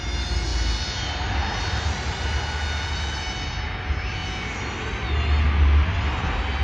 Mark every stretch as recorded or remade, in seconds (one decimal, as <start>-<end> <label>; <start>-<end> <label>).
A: 0.0-6.6 recorded